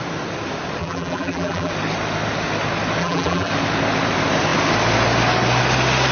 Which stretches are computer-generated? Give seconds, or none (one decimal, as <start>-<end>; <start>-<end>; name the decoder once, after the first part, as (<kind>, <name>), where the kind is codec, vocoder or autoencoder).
0.8-1.7 (vocoder, BigVGAN v2); 3.0-3.5